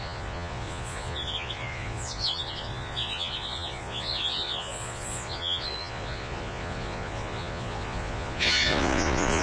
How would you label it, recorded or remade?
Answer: remade